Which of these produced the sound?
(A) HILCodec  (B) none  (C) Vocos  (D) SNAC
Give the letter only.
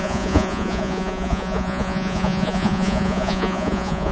C